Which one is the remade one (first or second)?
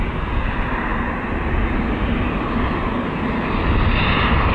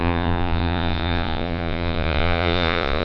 second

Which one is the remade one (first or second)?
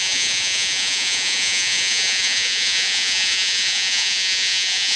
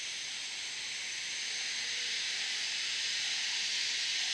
first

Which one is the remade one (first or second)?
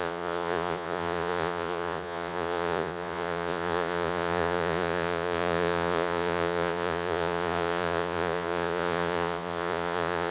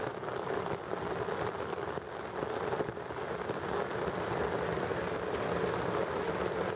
first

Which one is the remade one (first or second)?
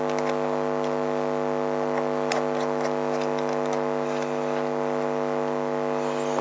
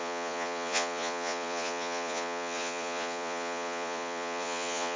second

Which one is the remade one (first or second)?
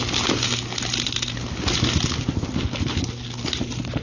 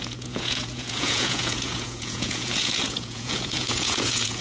second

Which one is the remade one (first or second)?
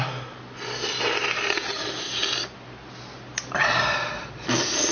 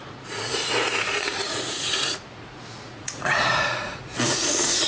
second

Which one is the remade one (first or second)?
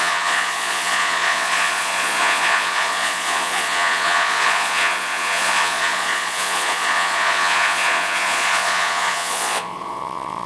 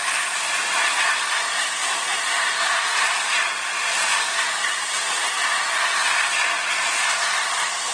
first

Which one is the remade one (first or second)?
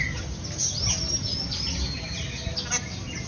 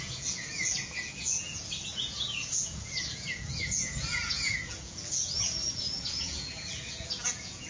second